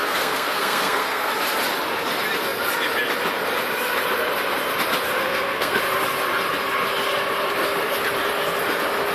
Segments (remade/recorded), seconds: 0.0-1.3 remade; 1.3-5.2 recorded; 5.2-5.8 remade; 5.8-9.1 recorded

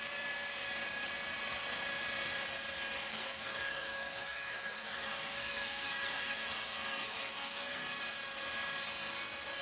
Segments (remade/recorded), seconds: 0.0-3.1 recorded; 3.1-8.0 remade; 8.0-9.6 recorded

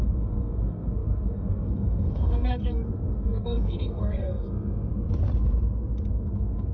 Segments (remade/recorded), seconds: 0.0-4.9 remade; 4.9-6.1 recorded; 6.1-6.7 remade

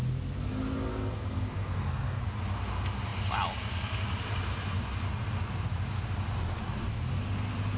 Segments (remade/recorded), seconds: 0.0-0.9 recorded; 0.9-2.2 remade; 2.2-7.8 recorded

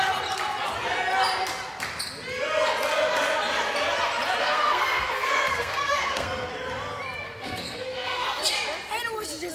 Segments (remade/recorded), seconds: 0.0-4.4 recorded; 4.4-6.5 remade; 6.5-7.2 recorded; 7.2-8.4 remade; 8.4-9.5 recorded

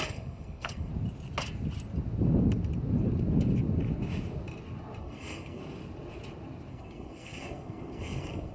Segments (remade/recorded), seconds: 0.0-0.9 remade; 0.9-5.0 recorded; 5.0-5.6 remade; 5.6-6.7 recorded; 6.7-8.5 remade

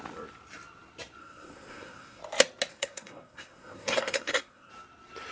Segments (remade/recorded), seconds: 0.0-1.2 recorded; 1.2-2.2 remade; 2.2-2.7 recorded; 2.7-4.7 remade; 4.7-5.3 recorded